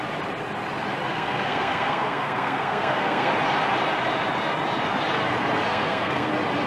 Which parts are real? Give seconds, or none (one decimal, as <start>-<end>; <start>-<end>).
0.0-1.1; 3.3-5.7; 6.3-6.7